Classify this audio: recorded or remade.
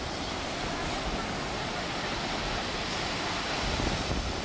recorded